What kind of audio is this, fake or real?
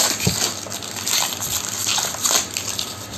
real